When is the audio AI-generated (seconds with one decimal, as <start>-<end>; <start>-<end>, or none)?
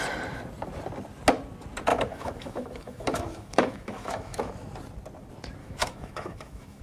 1.9-4.5; 5.6-6.8